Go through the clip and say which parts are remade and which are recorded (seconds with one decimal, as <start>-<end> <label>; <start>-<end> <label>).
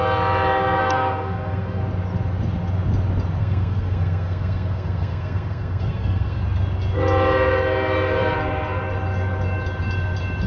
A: 0.0-0.8 recorded; 0.8-1.8 remade; 1.8-3.4 recorded; 3.4-6.4 remade; 6.4-10.5 recorded